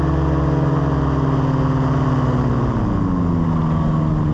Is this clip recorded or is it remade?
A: recorded